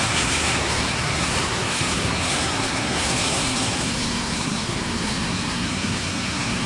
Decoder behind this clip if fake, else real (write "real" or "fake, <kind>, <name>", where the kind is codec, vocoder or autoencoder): fake, codec, SNAC